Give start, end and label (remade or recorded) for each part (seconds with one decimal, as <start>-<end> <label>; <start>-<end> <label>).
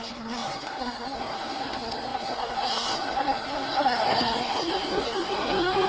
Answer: 0.0-5.9 remade